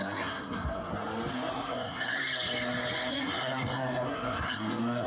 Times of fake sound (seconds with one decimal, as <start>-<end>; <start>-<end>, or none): 0.0-0.9; 1.5-2.2; 3.1-5.1